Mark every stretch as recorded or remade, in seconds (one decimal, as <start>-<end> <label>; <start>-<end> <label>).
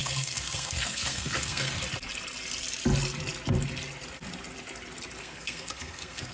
0.0-1.8 remade; 1.8-5.2 recorded; 5.2-6.3 remade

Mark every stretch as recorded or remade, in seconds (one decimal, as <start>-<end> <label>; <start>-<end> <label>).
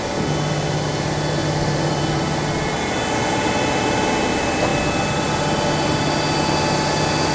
0.0-1.4 recorded; 1.4-2.2 remade; 2.2-7.3 recorded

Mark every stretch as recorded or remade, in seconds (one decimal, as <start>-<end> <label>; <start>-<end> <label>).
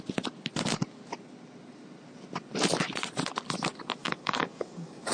0.0-4.0 recorded; 4.0-5.1 remade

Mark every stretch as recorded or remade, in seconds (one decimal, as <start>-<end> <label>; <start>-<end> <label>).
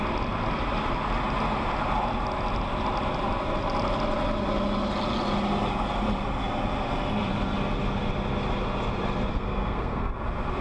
0.0-9.3 recorded; 9.3-10.1 remade; 10.1-10.6 recorded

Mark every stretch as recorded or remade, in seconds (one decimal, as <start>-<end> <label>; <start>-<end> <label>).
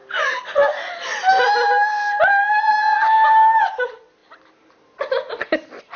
0.0-6.0 recorded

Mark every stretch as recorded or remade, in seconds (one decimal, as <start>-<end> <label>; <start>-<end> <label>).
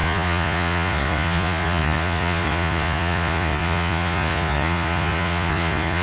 0.0-6.0 remade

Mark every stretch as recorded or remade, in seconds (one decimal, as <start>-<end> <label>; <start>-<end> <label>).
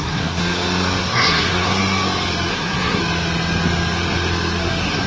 0.0-0.4 remade; 0.4-1.0 recorded; 1.0-1.8 remade; 1.8-2.5 recorded; 2.5-3.0 remade; 3.0-4.6 recorded; 4.6-5.1 remade